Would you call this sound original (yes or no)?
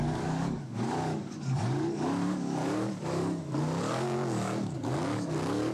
no